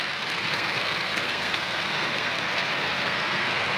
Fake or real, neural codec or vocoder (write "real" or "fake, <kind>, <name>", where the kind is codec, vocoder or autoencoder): fake, codec, SNAC